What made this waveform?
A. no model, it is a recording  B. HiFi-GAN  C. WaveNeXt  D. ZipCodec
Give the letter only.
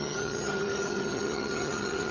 B